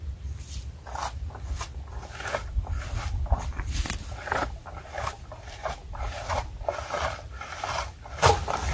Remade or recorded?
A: recorded